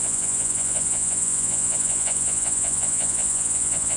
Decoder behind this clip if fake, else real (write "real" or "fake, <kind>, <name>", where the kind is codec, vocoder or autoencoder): fake, vocoder, Vocos